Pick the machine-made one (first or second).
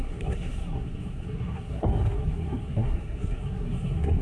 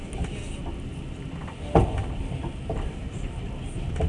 first